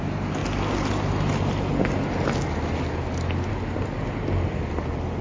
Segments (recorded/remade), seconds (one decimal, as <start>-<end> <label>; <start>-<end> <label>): 0.0-5.2 recorded